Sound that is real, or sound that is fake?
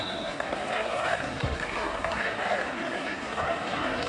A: fake